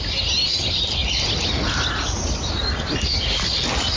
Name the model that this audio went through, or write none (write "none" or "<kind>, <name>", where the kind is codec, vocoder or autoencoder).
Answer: none